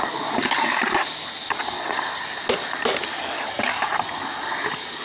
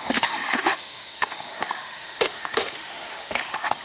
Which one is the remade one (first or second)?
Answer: second